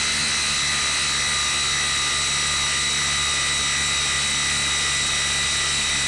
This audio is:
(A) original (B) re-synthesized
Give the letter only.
A